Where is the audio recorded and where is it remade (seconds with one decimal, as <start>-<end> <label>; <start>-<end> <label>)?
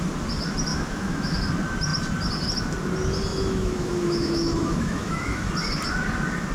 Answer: 0.0-0.7 recorded; 0.7-1.4 remade; 1.4-3.3 recorded; 3.3-5.5 remade; 5.5-6.5 recorded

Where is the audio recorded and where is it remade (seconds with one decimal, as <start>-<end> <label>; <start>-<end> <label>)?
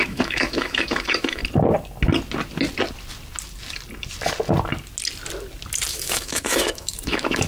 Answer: 0.0-1.4 remade; 1.4-5.9 recorded; 5.9-7.5 remade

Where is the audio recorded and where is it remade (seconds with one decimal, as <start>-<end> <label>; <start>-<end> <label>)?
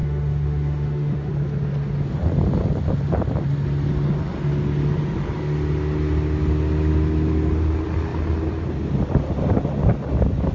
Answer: 0.0-1.3 remade; 1.3-10.5 recorded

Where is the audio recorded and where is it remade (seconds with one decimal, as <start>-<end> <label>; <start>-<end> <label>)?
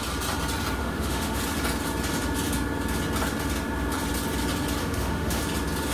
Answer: 0.0-0.8 recorded; 0.8-1.4 remade; 1.4-4.8 recorded; 4.8-5.4 remade; 5.4-5.9 recorded